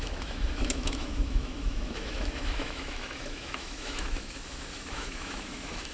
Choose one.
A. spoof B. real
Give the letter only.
A